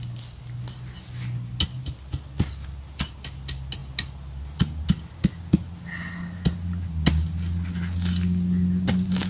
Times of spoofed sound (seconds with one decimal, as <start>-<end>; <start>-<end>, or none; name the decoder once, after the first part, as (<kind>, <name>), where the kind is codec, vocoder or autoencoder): none